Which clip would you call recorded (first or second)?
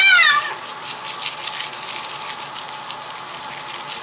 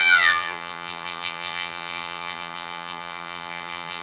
first